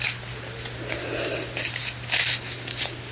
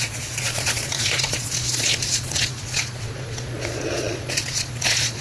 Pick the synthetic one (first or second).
second